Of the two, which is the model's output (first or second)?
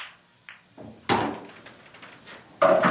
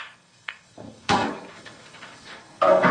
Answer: second